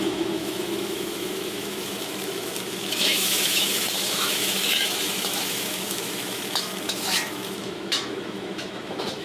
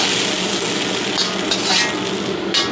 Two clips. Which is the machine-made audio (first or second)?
first